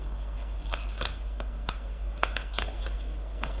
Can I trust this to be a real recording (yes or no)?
no